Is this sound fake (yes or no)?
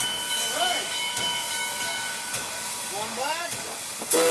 yes